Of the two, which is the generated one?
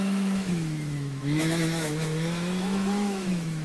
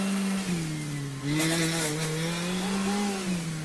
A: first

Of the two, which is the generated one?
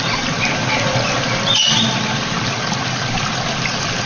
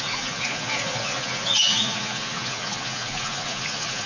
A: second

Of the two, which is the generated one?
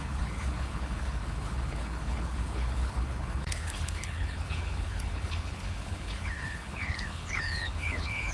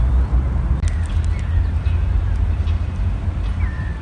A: first